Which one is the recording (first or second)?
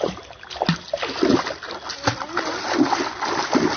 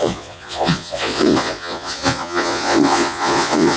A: first